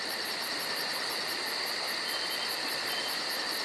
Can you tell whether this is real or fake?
real